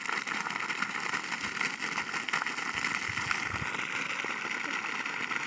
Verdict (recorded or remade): recorded